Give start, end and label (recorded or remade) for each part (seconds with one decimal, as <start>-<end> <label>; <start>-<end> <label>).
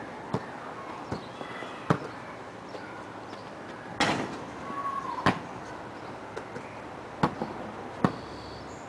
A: 0.0-8.9 recorded